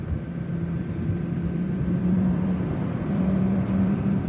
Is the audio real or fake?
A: fake